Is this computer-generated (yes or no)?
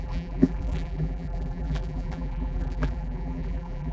yes